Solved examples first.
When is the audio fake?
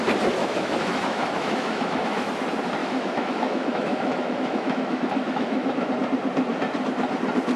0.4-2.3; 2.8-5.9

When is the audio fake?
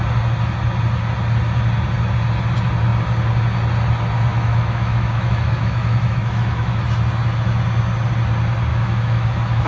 4.3-6.8; 8.7-9.7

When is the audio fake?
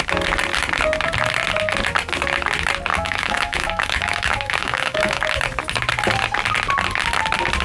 2.9-5.2